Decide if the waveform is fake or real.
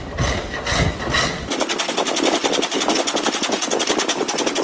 real